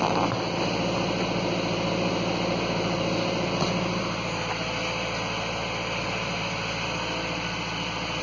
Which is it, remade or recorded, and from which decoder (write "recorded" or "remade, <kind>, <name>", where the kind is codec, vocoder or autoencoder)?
recorded